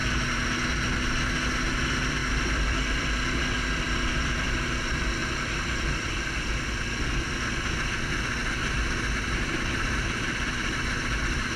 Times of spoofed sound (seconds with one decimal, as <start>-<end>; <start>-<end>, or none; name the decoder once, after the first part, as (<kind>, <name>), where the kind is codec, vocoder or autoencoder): 0.0-0.7 (vocoder, BigVGAN v2); 2.2-4.6; 5.2-6.1; 8.4-11.6